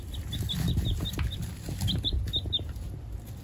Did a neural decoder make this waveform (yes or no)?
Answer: no